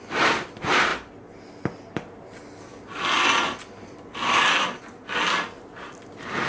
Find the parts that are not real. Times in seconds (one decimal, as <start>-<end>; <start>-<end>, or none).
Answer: none

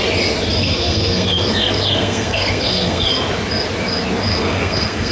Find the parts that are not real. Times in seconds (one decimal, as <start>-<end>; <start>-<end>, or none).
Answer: 0.6-3.1; 4.3-5.1

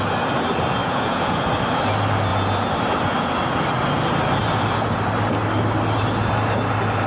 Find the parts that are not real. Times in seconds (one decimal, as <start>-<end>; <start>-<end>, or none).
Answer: 0.8-1.4

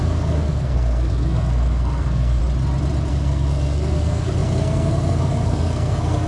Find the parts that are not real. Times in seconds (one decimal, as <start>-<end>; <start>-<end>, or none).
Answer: 0.0-2.4; 3.1-6.3

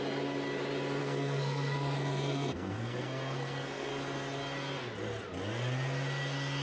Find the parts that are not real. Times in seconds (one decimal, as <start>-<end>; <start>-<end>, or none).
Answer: 1.0-3.9

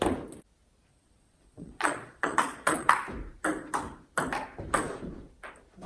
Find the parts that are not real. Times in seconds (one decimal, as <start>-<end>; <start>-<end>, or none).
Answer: 0.9-2.9

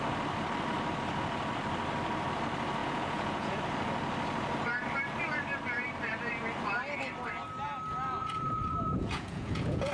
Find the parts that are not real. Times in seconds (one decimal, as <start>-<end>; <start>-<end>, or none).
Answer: 2.8-3.6; 8.2-9.9